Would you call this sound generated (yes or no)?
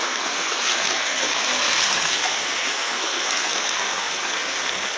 yes